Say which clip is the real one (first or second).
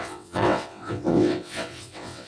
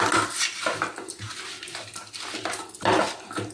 second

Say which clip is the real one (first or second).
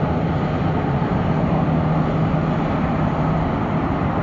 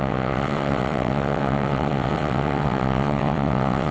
first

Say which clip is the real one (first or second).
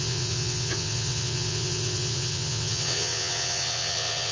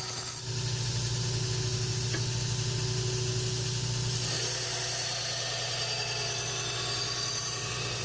second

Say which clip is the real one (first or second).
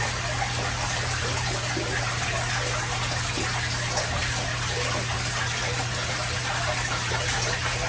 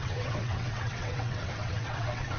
first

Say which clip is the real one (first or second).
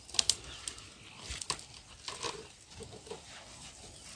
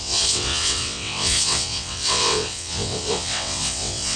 first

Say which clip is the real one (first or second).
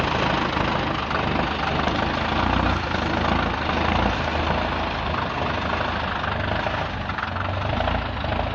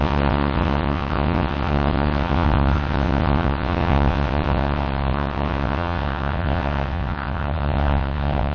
first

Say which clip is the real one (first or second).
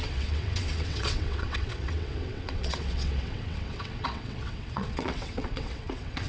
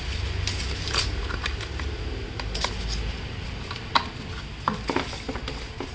second